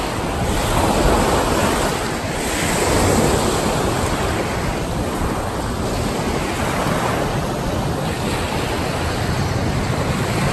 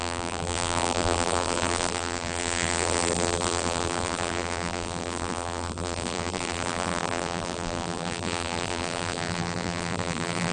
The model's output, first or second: second